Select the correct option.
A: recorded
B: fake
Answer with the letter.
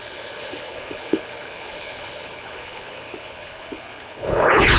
B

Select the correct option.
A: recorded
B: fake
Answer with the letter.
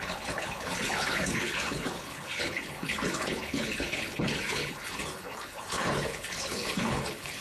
B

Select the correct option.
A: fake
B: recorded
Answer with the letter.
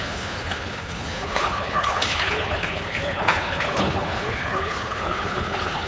A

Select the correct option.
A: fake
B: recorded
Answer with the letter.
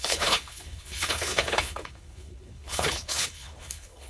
A